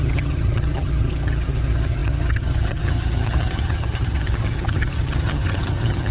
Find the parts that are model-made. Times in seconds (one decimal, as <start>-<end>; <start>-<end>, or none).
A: 0.0-6.1